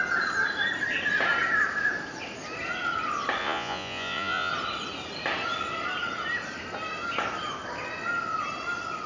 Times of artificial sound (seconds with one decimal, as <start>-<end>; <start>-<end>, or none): 3.4-4.5